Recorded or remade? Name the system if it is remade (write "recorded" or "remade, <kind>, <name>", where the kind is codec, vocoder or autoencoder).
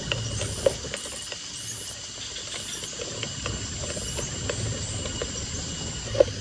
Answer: recorded